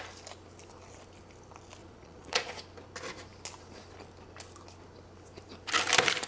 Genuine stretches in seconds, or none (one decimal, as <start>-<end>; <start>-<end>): 0.0-1.8; 2.5-6.3